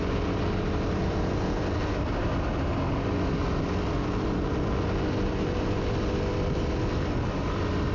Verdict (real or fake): real